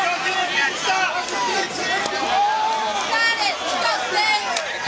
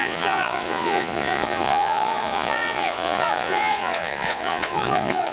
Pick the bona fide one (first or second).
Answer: first